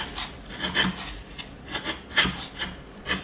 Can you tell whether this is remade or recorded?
recorded